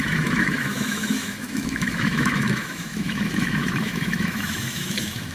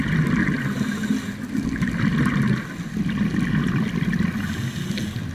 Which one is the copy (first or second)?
first